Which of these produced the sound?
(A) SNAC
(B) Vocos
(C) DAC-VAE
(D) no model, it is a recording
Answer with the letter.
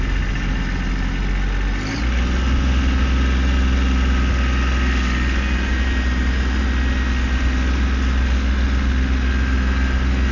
D